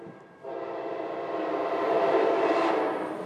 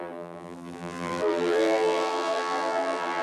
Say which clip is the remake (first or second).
second